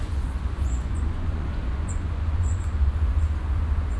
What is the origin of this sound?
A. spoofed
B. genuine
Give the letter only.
A